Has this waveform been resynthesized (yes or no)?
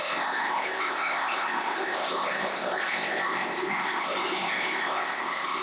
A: yes